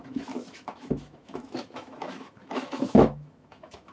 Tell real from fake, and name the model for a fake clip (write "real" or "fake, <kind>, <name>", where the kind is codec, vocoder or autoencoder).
fake, autoencoder, DAC-VAE